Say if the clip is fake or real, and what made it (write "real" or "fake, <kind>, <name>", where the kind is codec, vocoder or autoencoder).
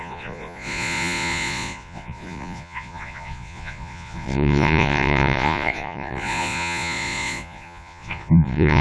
fake, vocoder, Vocos